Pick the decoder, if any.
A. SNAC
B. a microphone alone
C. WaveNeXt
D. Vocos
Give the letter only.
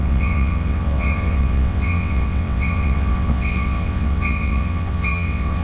C